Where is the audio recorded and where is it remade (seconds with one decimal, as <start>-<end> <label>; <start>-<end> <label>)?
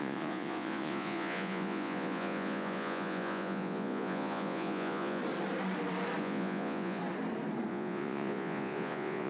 0.0-5.2 remade; 5.2-6.2 recorded; 6.2-7.0 remade; 7.0-7.7 recorded; 7.7-9.3 remade